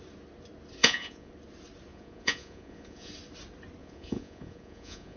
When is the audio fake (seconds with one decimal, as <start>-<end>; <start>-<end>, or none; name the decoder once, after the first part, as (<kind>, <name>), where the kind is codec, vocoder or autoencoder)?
0.8-1.3 (vocoder, Vocos); 1.9-3.1; 3.8-5.2